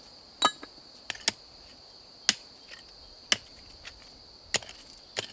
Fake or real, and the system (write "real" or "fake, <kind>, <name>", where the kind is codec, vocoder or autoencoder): real